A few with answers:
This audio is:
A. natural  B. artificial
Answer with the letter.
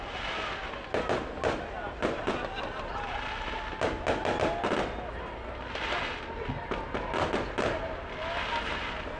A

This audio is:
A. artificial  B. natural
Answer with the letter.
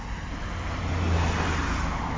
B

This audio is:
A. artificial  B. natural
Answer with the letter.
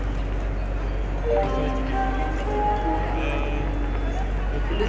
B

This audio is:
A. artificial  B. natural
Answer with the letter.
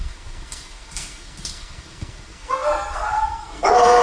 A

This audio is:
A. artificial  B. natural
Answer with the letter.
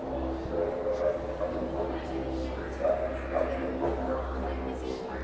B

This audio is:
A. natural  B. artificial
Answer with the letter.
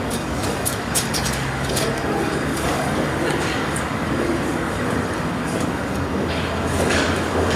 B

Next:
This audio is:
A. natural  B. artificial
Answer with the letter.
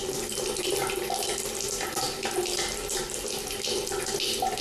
A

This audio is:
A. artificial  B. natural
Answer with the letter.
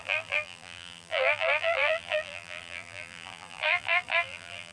A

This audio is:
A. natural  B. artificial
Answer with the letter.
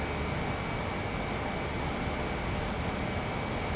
A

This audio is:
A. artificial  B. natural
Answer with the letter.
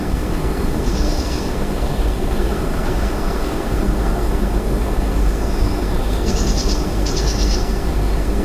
A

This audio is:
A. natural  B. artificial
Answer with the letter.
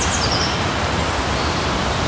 A